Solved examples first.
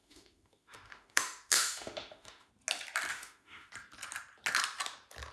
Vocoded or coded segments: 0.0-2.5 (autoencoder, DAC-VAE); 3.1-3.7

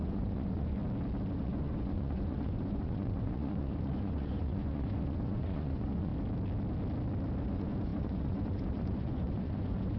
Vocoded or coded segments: 0.0-0.8 (vocoder, Vocos); 1.4-6.1; 7.4-10.0

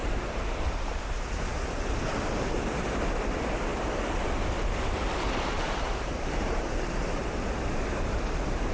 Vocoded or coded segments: 0.0-0.7 (vocoder, BigVGAN v2); 3.7-7.1